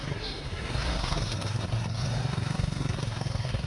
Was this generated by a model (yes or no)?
yes